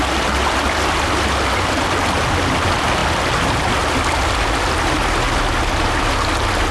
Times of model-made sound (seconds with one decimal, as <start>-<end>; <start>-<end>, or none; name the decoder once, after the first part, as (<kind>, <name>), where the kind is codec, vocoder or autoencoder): none